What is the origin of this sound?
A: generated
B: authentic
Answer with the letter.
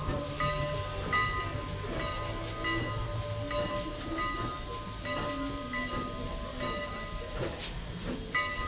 B